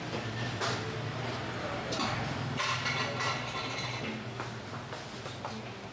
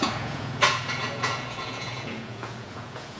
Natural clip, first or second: first